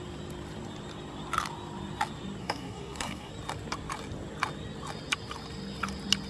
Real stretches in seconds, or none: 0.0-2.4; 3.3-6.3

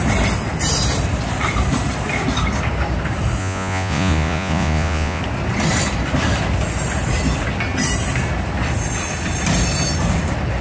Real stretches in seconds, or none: 0.0-3.4; 5.2-10.6

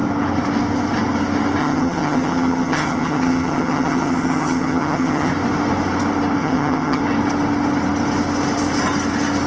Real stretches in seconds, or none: 0.0-1.6; 5.3-6.4; 7.0-9.5

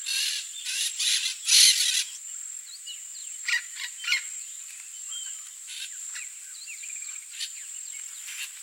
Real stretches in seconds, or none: 0.0-0.4; 0.9-3.2; 7.4-8.6

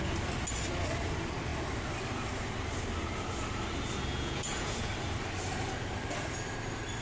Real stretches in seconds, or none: 0.0-4.1; 4.9-7.0

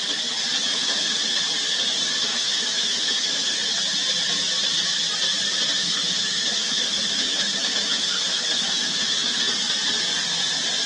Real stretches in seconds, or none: 0.0-0.7; 1.4-2.3; 3.6-5.8; 9.4-10.9

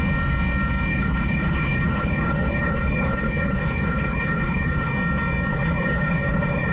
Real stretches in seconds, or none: 0.0-0.9; 4.9-5.5

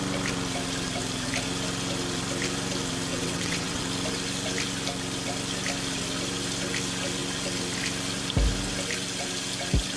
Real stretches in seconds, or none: 0.0-3.1; 3.8-10.0